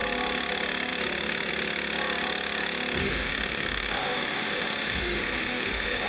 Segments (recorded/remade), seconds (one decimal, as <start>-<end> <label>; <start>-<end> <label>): 0.0-3.0 recorded; 3.0-6.1 remade